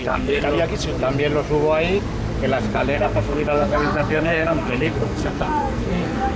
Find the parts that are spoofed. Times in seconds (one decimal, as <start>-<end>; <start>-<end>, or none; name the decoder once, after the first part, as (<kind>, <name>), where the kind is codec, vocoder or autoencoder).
0.0-0.4 (codec, SNAC); 2.7-6.4